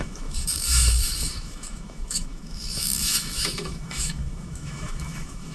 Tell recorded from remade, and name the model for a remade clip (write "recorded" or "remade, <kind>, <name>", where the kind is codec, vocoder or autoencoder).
remade, autoencoder, DAC-VAE